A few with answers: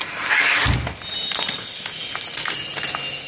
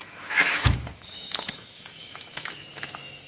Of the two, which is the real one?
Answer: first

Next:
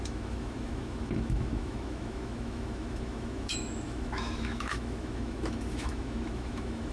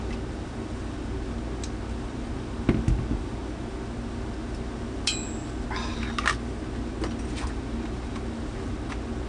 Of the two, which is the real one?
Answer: second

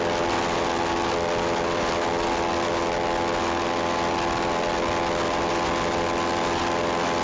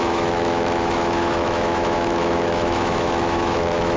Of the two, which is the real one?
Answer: first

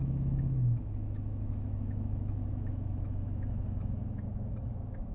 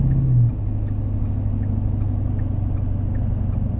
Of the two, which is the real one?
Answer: second